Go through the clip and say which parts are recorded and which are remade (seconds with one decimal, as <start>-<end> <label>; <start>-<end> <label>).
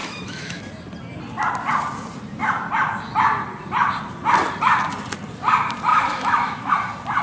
0.0-0.6 remade; 0.6-5.9 recorded; 5.9-6.7 remade; 6.7-7.2 recorded